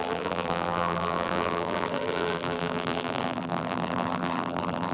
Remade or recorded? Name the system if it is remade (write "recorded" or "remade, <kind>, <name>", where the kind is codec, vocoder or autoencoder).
remade, vocoder, BigVGAN v2